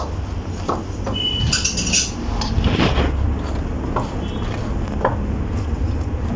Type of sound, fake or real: real